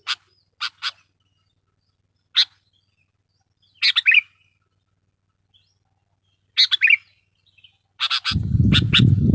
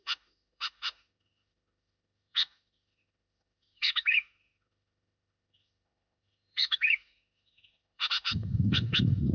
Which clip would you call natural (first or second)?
first